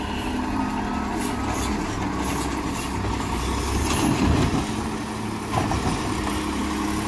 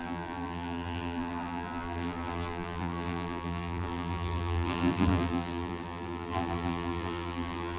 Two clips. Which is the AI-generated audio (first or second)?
second